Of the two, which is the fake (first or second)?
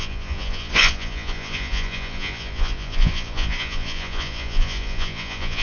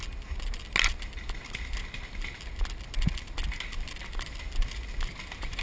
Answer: first